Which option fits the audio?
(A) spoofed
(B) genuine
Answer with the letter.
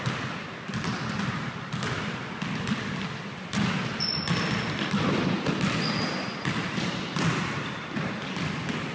B